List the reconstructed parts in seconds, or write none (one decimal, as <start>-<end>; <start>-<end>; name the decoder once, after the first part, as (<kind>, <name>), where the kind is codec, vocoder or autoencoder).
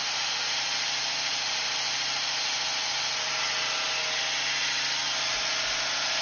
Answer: none